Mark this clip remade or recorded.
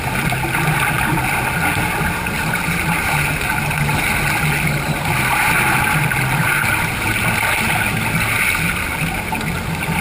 recorded